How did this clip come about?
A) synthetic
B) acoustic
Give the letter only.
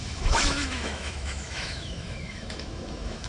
A